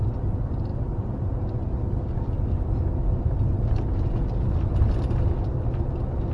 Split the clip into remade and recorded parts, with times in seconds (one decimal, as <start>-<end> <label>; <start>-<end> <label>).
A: 0.0-6.3 recorded